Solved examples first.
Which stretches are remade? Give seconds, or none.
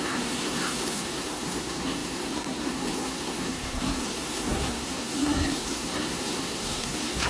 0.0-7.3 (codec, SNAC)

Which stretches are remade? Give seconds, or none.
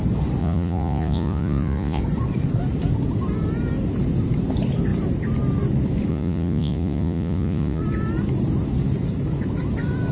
0.4-2.0 (vocoder, Vocos); 6.1-7.8